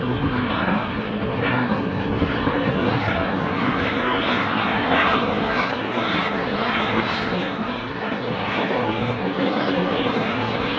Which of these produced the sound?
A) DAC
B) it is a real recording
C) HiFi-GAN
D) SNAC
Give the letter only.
D